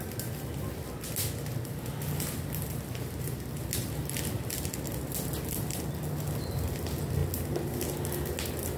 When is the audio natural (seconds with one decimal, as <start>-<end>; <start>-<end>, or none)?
0.0-8.8